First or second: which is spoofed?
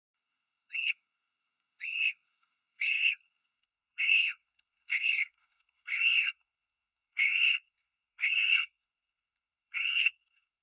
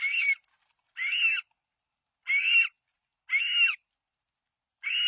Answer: first